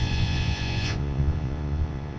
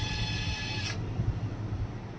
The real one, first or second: second